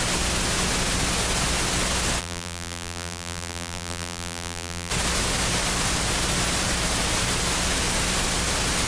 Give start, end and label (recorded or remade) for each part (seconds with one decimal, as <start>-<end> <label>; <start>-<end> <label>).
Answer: 0.0-2.2 recorded; 2.2-4.9 remade; 4.9-8.9 recorded